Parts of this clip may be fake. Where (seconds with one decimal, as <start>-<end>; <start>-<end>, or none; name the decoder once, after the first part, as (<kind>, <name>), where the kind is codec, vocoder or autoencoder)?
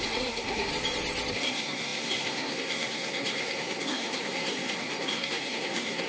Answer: 0.0-0.7 (codec, SNAC); 1.3-6.1